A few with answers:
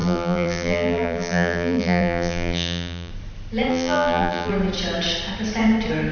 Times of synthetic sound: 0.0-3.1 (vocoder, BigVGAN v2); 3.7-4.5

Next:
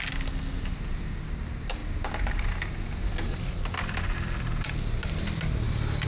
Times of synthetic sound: none

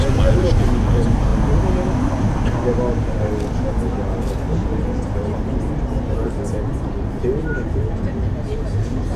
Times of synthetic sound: 6.7-9.2 (vocoder, BigVGAN v2)

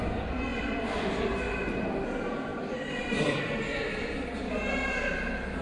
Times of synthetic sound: 0.5-1.3 (vocoder, BigVGAN v2); 2.5-3.4

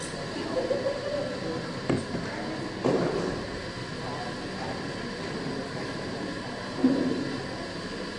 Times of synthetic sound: 0.0-1.1 (vocoder, BigVGAN v2); 2.9-3.9; 5.6-6.8; 7.6-8.2

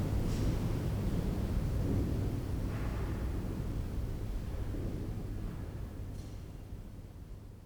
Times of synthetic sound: 2.9-4.8 (vocoder, BigVGAN v2)

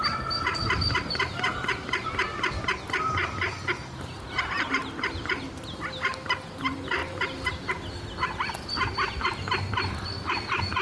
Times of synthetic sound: 7.0-7.7 (vocoder, BigVGAN v2)